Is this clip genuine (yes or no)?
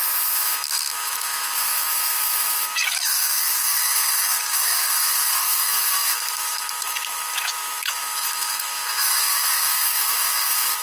no